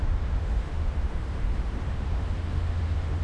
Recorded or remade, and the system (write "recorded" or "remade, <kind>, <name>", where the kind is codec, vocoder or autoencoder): remade, autoencoder, DAC-VAE